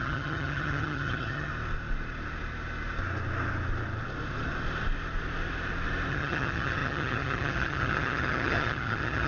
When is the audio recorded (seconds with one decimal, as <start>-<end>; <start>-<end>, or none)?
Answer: 1.5-6.1